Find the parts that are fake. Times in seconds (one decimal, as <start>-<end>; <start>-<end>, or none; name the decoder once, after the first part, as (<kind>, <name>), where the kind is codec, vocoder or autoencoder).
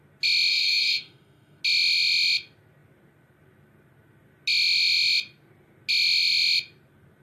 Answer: 0.5-1.6 (autoencoder, DAC-VAE)